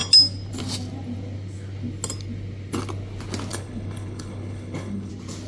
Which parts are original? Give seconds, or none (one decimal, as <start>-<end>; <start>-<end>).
0.0-3.5; 5.1-5.5